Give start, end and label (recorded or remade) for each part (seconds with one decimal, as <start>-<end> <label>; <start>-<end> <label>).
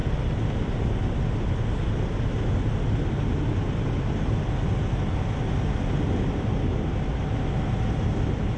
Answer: 0.0-8.6 recorded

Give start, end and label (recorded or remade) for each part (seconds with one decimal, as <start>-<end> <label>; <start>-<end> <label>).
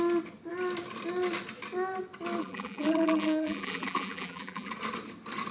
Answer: 0.0-2.4 recorded; 2.4-4.7 remade; 4.7-5.5 recorded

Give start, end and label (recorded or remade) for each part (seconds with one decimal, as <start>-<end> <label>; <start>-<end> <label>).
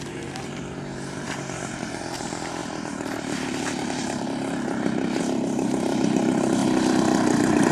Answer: 0.0-6.6 remade; 6.6-7.7 recorded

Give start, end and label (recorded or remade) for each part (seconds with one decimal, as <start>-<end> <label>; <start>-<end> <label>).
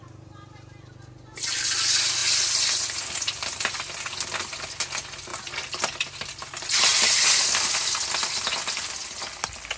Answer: 0.0-2.2 recorded; 2.2-4.0 remade; 4.0-5.3 recorded; 5.3-5.8 remade; 5.8-6.9 recorded; 6.9-8.3 remade; 8.3-9.8 recorded